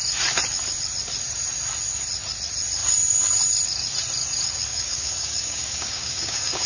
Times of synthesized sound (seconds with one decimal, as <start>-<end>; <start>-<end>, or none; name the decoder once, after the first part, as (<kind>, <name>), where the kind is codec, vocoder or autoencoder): 4.7-6.7 (codec, DAC)